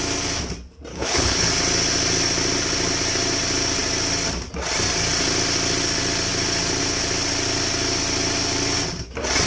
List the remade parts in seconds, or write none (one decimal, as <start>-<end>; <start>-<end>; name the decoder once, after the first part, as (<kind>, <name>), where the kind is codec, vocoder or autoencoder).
0.9-1.5 (codec, HILCodec)